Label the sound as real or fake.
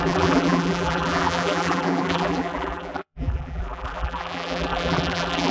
fake